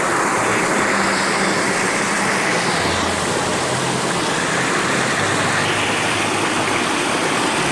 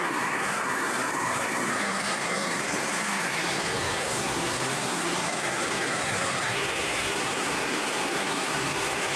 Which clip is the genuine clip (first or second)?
first